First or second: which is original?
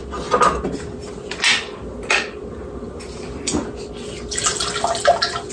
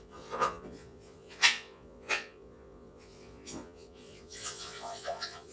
first